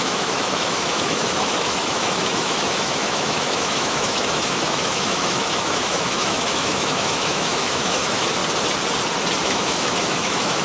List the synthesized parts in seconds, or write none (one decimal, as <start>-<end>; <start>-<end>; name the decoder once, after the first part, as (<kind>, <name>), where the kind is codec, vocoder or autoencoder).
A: 0.0-8.4 (autoencoder, DAC-VAE); 9.4-10.6